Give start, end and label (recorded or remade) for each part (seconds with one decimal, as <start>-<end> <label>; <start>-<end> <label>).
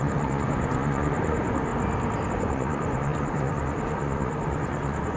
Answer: 0.0-1.7 remade; 1.7-2.3 recorded; 2.3-5.2 remade